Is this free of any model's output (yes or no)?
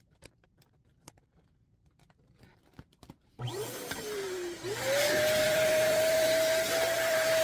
no